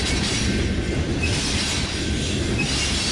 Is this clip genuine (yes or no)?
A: yes